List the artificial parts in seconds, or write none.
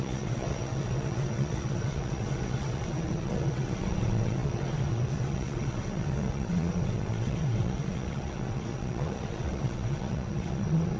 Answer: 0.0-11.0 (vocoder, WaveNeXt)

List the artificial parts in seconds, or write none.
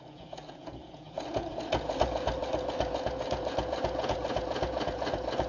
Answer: 0.0-5.5 (vocoder, Vocos)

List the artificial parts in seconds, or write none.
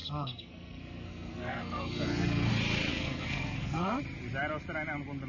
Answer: 0.0-2.5 (codec, SNAC); 2.9-4.0